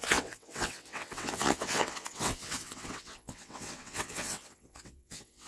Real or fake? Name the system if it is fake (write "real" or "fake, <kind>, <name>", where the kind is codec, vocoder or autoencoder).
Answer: fake, vocoder, WaveNeXt